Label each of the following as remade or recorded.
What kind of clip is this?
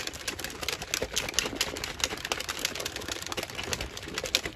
recorded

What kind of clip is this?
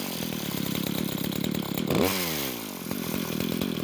recorded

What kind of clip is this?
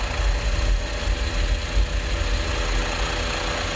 recorded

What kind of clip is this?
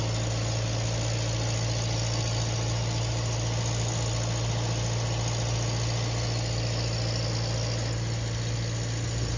recorded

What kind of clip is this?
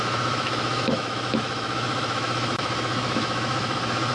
remade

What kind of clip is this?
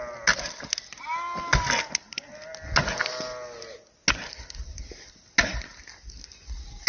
recorded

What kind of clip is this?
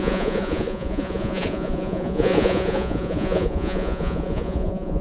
remade